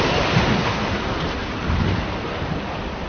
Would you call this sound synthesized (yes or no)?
no